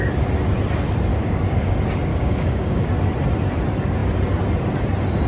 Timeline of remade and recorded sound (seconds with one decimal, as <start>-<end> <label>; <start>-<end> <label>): 0.0-1.1 recorded; 1.1-1.7 remade; 1.7-2.1 recorded; 2.1-2.9 remade; 2.9-5.3 recorded